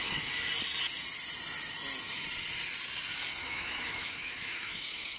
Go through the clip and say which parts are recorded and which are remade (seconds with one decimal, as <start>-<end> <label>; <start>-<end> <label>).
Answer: 0.0-3.4 recorded; 3.4-5.2 remade